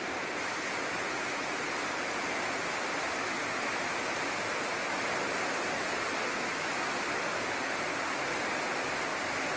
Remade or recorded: recorded